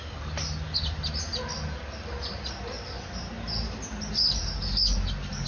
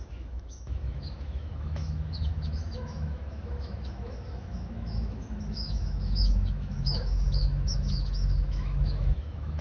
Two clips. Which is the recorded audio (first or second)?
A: first